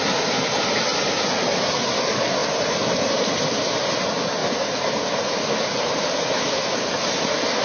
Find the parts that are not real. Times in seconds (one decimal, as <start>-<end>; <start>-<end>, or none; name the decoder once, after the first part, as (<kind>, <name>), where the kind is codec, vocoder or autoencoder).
none